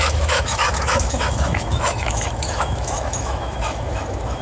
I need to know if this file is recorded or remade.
remade